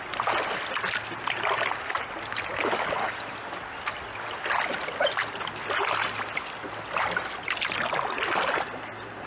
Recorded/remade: recorded